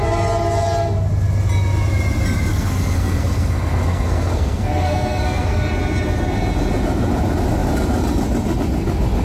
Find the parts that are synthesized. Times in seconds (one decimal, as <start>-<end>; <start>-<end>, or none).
2.5-5.7